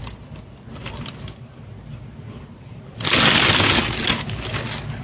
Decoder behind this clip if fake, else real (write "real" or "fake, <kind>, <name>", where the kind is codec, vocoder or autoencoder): real